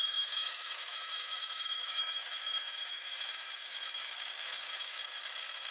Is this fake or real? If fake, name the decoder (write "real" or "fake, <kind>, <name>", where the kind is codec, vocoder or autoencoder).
fake, autoencoder, DAC-VAE